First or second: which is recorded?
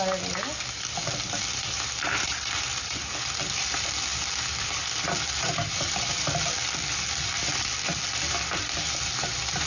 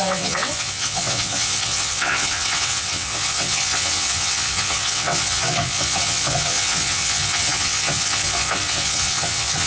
first